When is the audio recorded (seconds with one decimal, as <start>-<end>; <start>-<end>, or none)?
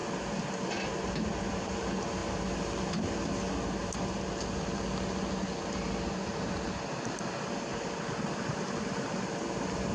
0.0-9.9